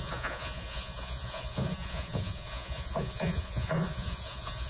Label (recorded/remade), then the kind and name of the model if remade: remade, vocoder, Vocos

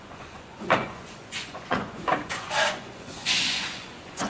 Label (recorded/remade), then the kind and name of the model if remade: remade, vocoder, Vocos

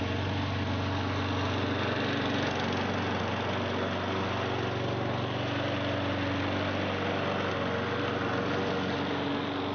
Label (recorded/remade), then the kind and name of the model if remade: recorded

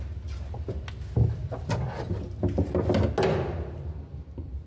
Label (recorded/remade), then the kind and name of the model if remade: recorded